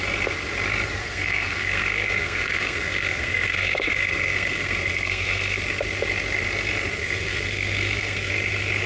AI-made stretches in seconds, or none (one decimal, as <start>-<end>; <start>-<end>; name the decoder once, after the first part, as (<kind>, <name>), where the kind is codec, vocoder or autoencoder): 1.0-5.6 (codec, SNAC); 7.0-8.3